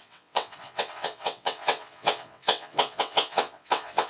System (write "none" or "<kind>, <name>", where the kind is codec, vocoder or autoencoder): vocoder, WaveNeXt